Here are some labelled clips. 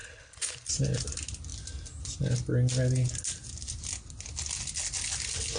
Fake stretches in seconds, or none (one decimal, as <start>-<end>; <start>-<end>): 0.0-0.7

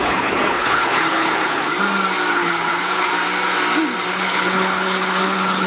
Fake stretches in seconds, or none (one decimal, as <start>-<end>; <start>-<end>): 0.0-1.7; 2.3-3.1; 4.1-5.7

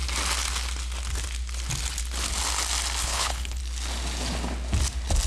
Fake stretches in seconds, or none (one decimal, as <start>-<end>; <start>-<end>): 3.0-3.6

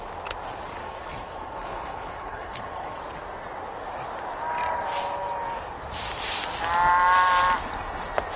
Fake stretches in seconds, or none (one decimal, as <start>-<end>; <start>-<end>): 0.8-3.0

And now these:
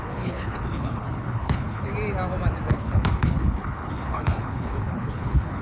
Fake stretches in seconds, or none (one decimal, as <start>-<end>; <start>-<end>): 0.0-1.9; 2.7-5.6

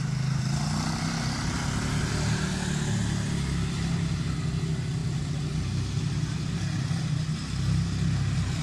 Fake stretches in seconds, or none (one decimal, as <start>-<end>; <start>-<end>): none

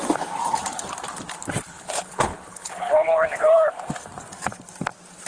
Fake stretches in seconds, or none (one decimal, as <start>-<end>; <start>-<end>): 1.6-3.7

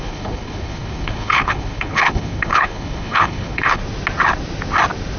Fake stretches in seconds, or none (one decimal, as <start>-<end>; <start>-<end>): 0.0-3.8